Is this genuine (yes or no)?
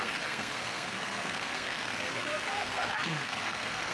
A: no